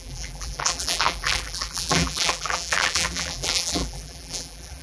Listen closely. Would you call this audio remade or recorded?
remade